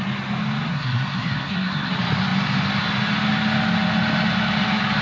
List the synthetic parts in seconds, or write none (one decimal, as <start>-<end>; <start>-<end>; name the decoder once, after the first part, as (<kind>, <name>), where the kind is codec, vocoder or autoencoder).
0.7-1.9 (codec, SNAC)